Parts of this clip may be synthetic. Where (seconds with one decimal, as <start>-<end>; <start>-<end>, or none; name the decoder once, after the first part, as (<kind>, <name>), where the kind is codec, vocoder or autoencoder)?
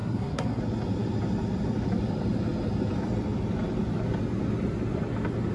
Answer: 0.0-0.6 (codec, SNAC)